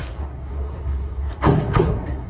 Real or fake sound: fake